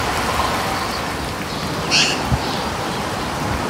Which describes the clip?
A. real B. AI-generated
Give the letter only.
A